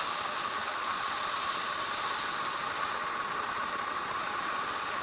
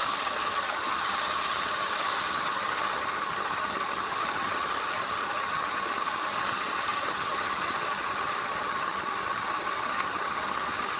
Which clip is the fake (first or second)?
second